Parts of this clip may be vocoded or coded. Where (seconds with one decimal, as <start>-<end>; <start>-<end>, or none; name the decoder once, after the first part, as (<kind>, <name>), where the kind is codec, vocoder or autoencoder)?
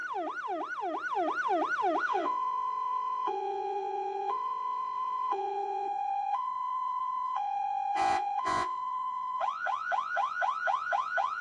2.0-11.4 (vocoder, Vocos)